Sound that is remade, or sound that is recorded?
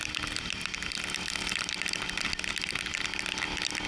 recorded